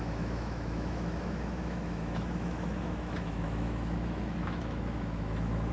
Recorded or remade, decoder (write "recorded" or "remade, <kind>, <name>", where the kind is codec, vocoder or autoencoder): remade, autoencoder, DAC-VAE